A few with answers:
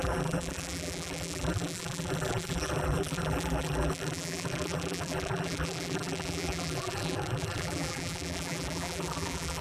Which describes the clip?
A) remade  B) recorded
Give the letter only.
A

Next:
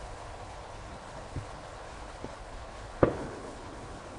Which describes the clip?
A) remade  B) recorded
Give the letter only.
A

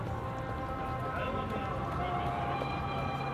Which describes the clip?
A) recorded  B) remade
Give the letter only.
A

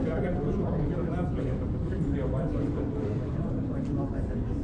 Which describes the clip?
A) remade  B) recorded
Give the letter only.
A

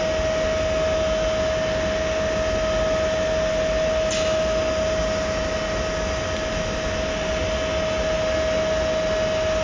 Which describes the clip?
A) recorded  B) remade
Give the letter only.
A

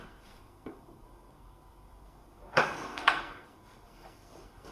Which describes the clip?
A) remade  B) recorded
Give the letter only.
A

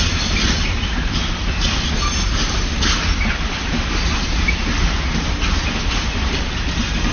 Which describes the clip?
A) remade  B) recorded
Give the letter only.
B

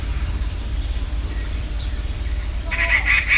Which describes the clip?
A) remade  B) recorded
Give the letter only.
A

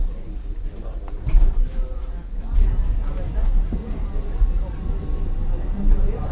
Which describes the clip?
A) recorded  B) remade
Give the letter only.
A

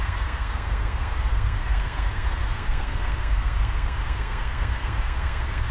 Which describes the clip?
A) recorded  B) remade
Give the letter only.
B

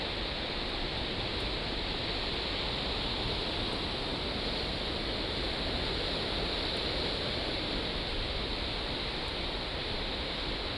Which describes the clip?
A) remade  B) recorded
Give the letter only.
B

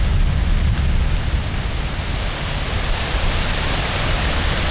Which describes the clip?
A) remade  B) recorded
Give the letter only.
B